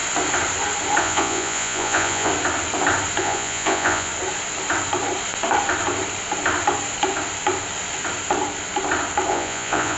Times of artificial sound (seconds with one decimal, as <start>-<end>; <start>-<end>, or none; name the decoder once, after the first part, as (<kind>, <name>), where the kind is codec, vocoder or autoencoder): 1.0-2.3 (vocoder, Vocos); 3.2-4.1; 9.3-10.0